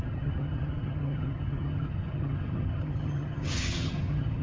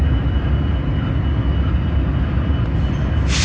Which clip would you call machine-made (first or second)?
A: first